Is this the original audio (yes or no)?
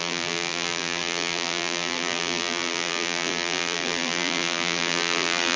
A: no